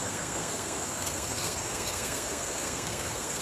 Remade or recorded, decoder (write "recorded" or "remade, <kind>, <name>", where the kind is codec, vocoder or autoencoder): remade, codec, SNAC